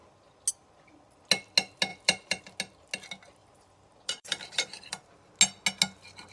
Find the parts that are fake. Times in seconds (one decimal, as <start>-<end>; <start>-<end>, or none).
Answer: 1.9-2.4; 3.4-5.3